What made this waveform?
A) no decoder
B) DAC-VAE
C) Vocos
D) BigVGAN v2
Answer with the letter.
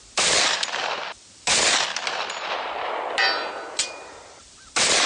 D